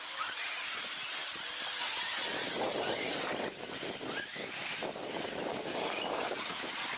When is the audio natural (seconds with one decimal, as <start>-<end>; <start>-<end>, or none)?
0.0-5.5